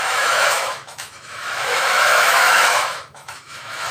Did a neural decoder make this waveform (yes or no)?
yes